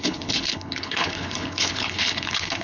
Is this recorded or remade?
remade